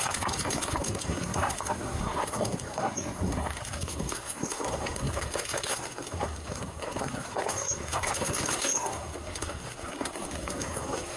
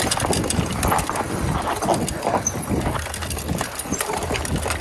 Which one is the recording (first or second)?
second